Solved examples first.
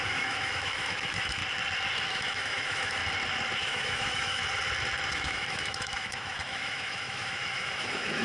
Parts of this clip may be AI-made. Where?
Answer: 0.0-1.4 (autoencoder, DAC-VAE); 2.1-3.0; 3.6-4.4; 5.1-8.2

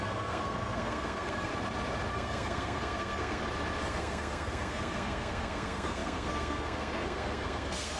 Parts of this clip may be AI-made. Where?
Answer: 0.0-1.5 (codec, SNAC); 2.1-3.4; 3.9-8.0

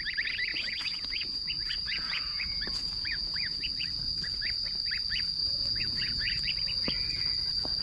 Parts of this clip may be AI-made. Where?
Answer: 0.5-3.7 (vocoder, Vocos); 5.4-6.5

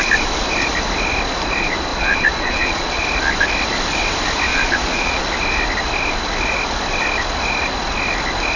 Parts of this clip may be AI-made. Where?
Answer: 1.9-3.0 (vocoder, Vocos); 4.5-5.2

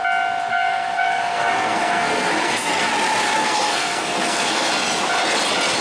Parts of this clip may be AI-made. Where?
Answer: 0.5-2.9 (codec, SNAC); 3.4-4.7